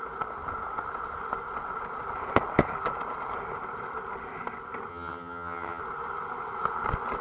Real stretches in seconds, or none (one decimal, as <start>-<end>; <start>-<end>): 0.0-4.9; 5.8-7.2